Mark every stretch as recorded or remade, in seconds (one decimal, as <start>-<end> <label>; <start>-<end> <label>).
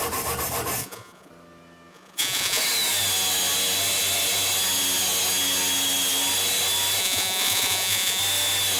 0.0-0.8 recorded; 0.8-1.3 remade; 1.3-1.9 recorded; 1.9-2.6 remade; 2.6-7.0 recorded; 7.0-8.2 remade; 8.2-8.8 recorded